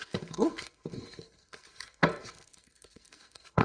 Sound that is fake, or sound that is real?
fake